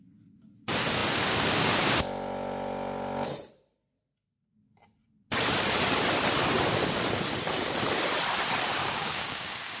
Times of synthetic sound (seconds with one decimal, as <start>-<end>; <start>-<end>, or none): 8.8-9.8